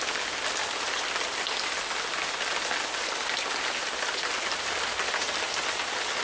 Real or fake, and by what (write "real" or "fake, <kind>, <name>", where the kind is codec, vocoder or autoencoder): real